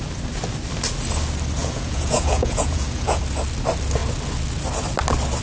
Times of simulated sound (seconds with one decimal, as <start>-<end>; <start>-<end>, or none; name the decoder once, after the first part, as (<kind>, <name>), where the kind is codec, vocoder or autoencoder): 1.6-3.2 (vocoder, Vocos)